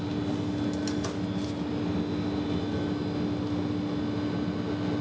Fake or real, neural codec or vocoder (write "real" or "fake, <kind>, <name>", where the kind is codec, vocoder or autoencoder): real